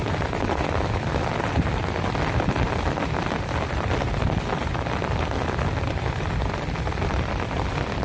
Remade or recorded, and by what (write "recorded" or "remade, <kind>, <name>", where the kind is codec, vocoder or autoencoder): remade, vocoder, BigVGAN v2